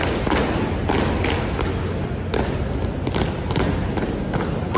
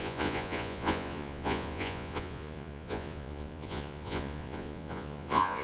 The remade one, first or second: second